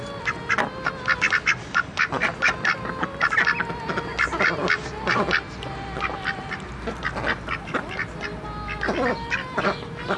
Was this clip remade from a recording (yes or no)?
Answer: no